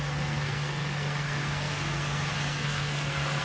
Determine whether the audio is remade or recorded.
remade